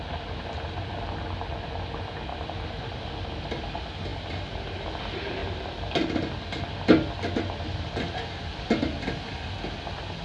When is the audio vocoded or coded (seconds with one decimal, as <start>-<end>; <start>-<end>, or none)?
2.3-3.1; 4.1-5.0; 5.4-8.7